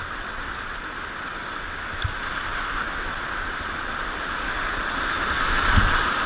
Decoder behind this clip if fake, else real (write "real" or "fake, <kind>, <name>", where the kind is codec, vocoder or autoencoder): real